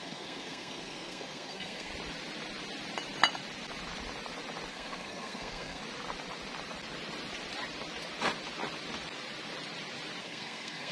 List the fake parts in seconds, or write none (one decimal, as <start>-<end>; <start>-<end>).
0.0-1.9; 4.7-5.8; 10.2-10.9

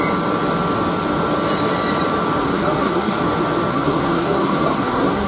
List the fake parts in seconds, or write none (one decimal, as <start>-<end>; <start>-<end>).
2.4-3.2; 3.7-5.3

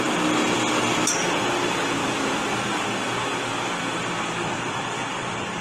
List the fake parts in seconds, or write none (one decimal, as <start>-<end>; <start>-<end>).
2.0-5.6

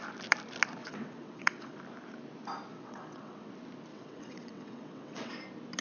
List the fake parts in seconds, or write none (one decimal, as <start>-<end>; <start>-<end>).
0.8-1.8; 2.7-3.5; 3.9-5.3

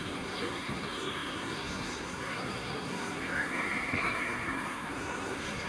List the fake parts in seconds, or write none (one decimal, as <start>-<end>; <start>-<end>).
0.0-5.7

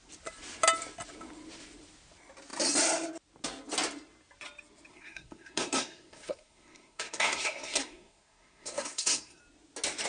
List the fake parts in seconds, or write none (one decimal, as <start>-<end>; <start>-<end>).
4.9-9.4

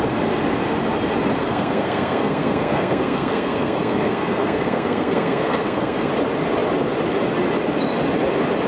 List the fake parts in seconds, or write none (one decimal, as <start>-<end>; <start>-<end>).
1.4-6.1